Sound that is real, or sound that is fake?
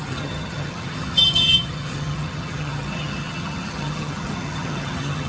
fake